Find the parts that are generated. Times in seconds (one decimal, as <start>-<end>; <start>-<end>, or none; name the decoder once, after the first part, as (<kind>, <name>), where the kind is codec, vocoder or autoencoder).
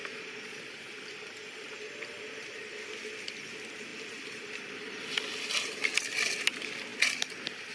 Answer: 0.0-0.6 (vocoder, Vocos)